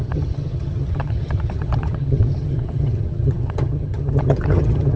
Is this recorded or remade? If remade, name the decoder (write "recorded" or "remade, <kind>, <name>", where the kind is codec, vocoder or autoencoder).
remade, vocoder, HiFi-GAN